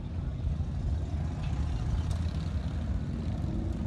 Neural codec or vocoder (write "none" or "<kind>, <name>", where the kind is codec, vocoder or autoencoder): none